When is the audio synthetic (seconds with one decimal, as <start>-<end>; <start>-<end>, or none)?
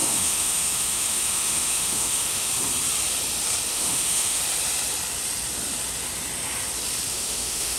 0.0-2.5; 3.7-4.4; 7.1-7.8